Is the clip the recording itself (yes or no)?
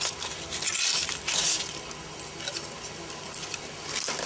yes